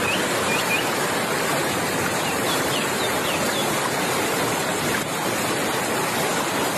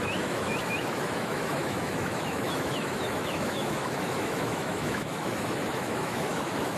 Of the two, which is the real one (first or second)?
first